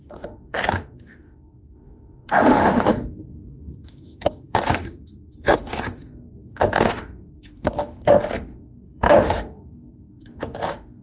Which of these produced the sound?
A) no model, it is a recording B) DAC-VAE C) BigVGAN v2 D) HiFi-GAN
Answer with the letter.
B